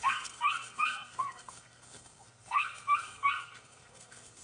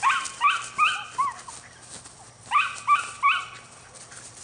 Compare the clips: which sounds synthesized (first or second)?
first